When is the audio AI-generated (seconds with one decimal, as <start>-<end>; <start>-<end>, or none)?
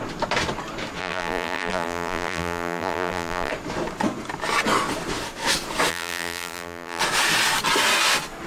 1.0-3.5; 5.9-7.0